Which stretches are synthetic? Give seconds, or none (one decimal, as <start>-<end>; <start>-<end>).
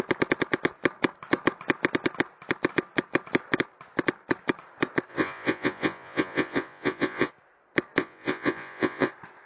5.1-7.3; 8.0-9.1